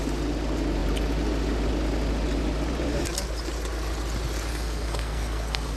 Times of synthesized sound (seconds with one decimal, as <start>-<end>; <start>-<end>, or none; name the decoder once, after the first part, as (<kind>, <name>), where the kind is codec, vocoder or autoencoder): 4.5-5.8 (codec, SNAC)